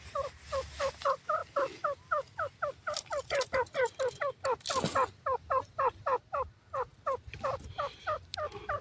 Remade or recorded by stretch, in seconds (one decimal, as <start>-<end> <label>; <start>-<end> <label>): 0.0-8.8 recorded